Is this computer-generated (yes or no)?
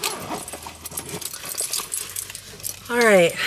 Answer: no